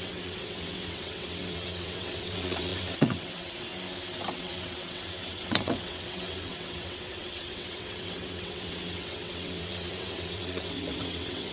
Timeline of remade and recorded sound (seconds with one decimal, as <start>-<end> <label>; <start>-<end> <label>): 0.0-3.7 remade; 3.7-4.3 recorded; 4.3-11.5 remade